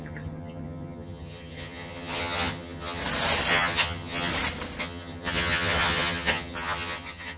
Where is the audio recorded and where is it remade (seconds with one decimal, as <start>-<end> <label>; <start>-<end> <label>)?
0.0-3.0 remade; 3.0-3.5 recorded; 3.5-4.3 remade; 4.3-4.8 recorded; 4.8-7.4 remade